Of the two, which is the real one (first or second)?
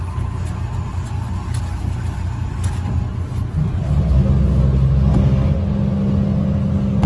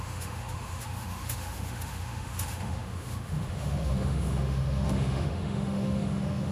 first